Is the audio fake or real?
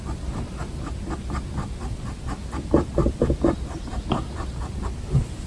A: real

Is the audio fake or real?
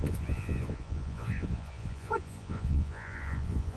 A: fake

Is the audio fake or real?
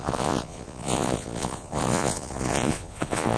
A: fake